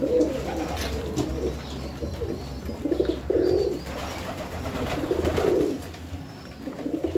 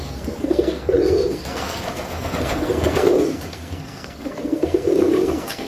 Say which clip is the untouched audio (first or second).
first